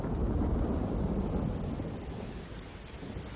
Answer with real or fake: real